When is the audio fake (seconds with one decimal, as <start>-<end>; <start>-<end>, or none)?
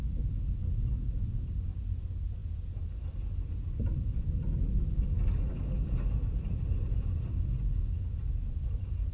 none